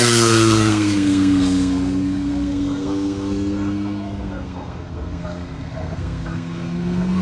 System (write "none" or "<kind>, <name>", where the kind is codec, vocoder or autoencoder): codec, SNAC